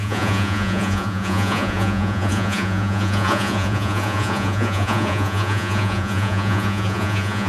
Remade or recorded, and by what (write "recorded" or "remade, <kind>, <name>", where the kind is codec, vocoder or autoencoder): remade, vocoder, Vocos